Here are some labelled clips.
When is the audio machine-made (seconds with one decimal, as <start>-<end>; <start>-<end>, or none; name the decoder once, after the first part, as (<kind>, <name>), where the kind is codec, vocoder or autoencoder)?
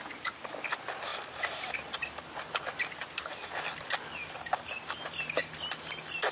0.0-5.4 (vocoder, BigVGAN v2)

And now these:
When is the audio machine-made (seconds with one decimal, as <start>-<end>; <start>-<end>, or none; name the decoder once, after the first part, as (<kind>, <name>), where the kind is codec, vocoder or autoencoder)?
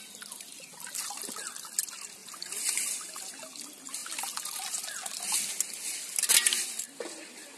none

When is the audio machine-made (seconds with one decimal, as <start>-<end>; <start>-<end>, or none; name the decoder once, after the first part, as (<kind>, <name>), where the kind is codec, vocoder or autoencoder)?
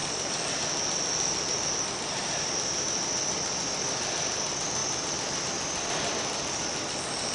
0.0-1.7 (vocoder, BigVGAN v2)